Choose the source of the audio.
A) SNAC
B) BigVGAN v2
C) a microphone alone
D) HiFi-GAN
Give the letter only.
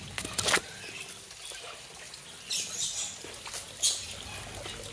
C